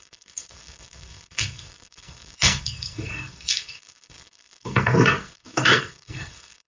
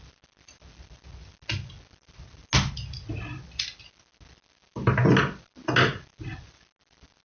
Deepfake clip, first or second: first